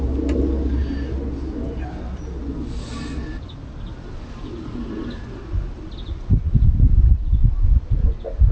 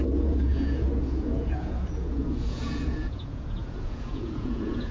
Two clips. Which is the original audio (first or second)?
first